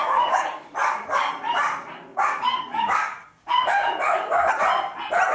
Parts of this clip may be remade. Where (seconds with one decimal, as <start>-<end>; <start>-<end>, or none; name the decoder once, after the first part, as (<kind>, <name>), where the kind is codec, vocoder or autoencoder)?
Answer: 0.0-1.3 (codec, DAC); 2.1-4.5